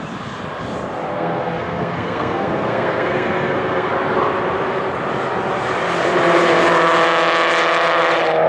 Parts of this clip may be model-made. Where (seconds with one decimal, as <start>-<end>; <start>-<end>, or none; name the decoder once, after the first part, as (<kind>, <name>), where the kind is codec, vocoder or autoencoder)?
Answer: 1.1-3.9 (codec, SNAC)